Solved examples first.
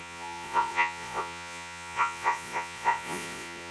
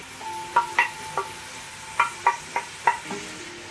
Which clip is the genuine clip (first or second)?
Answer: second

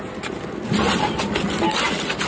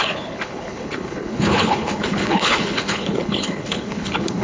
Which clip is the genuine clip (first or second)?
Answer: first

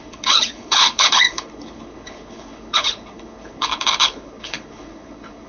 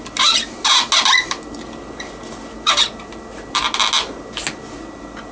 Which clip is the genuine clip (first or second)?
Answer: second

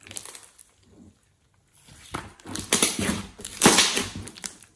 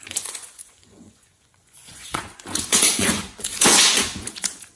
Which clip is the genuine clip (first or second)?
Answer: first